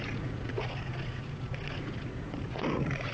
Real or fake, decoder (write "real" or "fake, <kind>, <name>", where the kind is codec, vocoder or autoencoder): fake, vocoder, Vocos